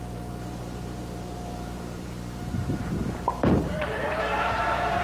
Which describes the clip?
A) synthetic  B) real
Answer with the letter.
A